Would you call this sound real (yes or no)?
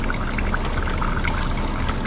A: yes